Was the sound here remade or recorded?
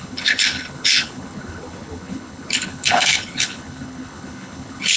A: remade